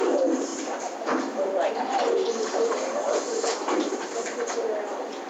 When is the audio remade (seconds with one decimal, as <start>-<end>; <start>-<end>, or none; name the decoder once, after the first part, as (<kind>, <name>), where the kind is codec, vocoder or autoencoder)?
none